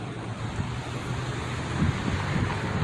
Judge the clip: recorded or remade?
recorded